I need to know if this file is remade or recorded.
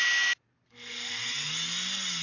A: recorded